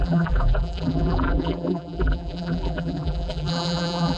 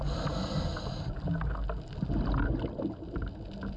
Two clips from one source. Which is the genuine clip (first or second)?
second